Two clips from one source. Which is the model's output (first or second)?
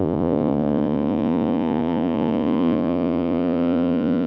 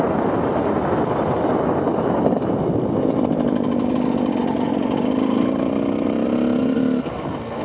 first